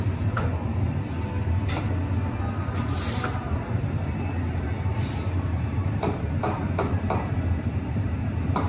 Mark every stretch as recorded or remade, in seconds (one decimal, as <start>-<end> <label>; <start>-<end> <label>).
0.0-0.5 remade; 0.5-2.7 recorded; 2.7-8.7 remade